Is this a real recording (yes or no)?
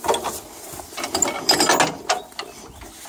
yes